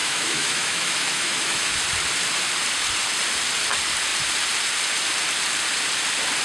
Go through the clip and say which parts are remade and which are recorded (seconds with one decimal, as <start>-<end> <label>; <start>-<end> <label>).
0.0-1.8 remade; 1.8-6.4 recorded